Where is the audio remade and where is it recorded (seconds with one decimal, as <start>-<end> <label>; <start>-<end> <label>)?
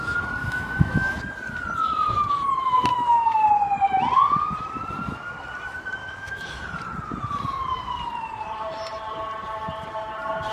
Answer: 0.0-0.4 recorded; 0.4-1.2 remade; 1.2-2.9 recorded; 2.9-3.5 remade; 3.5-6.0 recorded; 6.0-6.6 remade; 6.6-10.5 recorded